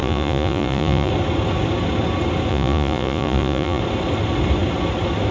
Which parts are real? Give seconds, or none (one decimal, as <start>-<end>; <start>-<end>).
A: 1.1-2.5; 3.8-5.3